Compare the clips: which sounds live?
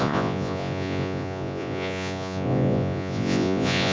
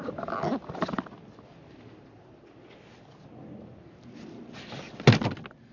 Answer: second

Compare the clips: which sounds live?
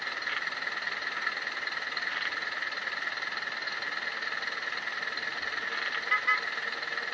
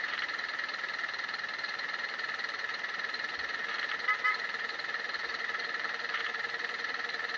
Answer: first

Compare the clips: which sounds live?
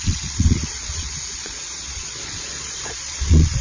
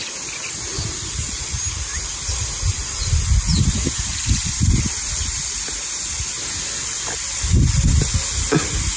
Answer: second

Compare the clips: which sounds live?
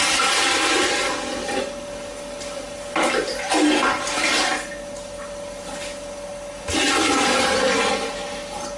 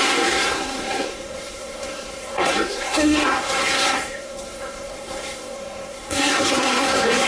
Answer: first